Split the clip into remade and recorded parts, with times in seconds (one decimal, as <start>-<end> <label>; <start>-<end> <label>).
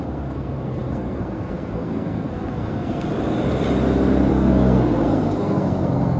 0.0-3.1 remade; 3.1-4.3 recorded; 4.3-6.2 remade